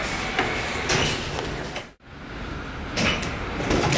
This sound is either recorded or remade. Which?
recorded